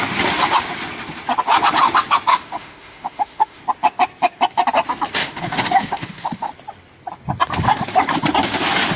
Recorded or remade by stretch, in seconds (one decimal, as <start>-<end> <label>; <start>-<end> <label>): 0.0-2.3 recorded; 2.3-3.6 remade; 3.6-5.2 recorded; 5.2-6.5 remade; 6.5-9.0 recorded